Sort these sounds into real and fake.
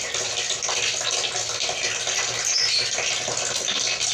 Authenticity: real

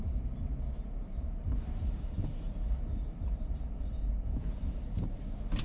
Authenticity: fake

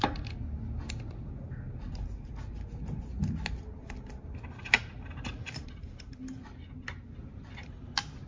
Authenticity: real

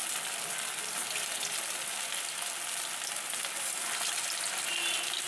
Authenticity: real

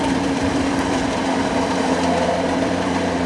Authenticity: fake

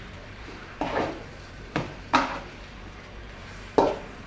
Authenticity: fake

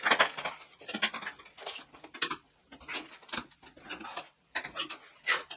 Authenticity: real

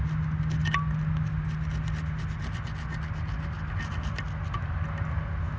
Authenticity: real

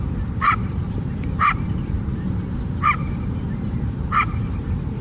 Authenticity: fake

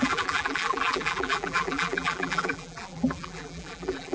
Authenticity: fake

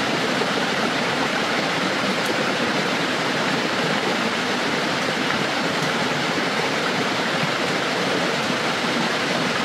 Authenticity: fake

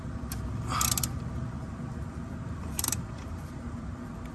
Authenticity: fake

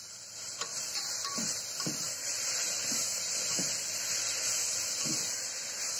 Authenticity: fake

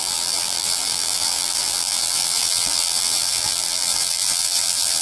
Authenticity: fake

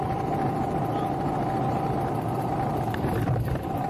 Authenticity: fake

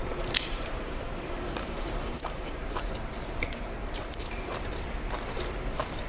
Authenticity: fake